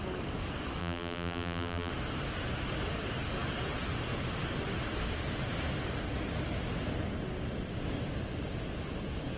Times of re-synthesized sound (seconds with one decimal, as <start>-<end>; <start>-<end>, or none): 0.8-1.9